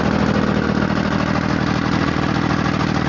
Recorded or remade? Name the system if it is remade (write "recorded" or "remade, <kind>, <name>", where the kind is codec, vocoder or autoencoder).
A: recorded